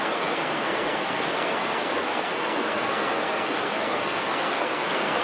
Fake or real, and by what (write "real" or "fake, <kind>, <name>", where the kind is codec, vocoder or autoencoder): fake, codec, SNAC